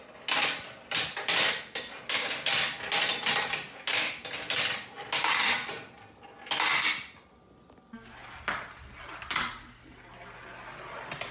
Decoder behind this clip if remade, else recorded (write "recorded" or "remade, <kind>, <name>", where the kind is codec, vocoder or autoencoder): recorded